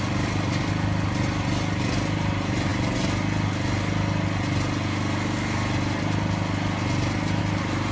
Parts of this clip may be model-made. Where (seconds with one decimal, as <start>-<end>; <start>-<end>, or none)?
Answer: none